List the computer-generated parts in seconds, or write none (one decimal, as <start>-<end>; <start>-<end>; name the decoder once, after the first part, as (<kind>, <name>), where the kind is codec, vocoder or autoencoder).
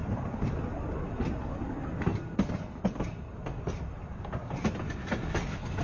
0.0-0.6 (vocoder, BigVGAN v2); 2.1-5.8